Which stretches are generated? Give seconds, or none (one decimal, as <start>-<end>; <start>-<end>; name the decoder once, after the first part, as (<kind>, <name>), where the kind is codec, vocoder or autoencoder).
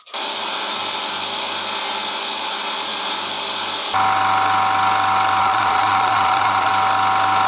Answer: 5.4-6.7 (vocoder, Vocos)